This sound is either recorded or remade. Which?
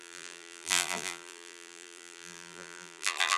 remade